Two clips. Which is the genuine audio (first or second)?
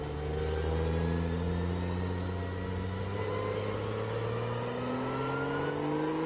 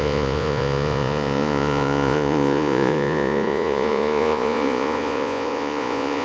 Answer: first